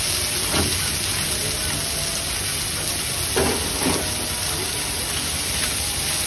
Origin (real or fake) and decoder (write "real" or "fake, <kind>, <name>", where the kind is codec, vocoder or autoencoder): real